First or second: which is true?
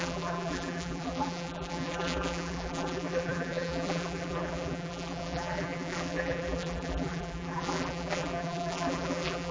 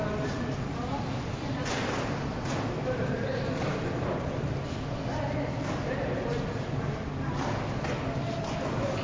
second